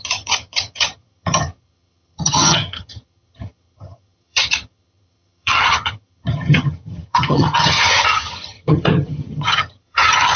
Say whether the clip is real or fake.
fake